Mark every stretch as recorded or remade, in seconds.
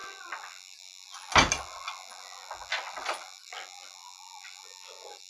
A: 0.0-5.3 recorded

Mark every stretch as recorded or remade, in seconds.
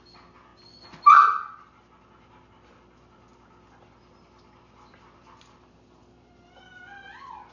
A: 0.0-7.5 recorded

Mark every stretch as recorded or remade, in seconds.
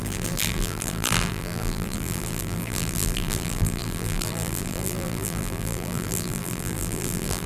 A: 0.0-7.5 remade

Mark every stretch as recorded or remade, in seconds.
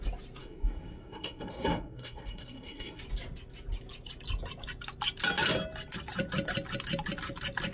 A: 0.0-0.4 recorded; 0.4-3.0 remade; 3.0-7.7 recorded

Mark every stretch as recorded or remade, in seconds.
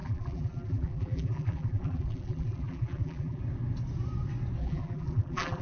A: 0.0-3.4 remade; 3.4-4.6 recorded; 4.6-5.6 remade